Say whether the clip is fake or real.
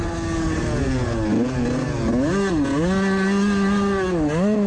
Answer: real